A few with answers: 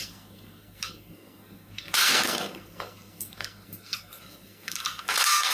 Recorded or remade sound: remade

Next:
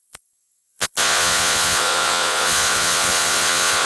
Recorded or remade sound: remade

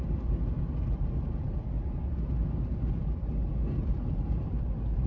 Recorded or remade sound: recorded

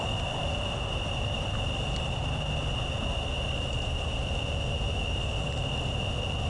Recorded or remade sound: recorded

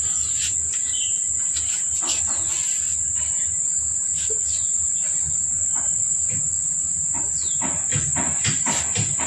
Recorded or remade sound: recorded